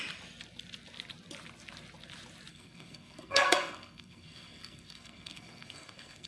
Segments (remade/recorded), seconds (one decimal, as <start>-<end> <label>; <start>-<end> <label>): 0.0-2.5 recorded; 2.5-6.3 remade